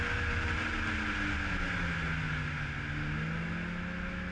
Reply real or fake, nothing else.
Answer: real